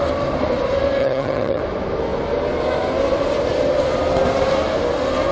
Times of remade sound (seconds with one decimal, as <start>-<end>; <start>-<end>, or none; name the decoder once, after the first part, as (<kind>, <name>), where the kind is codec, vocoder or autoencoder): 1.0-1.6 (vocoder, HiFi-GAN)